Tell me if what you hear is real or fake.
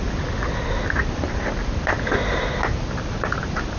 real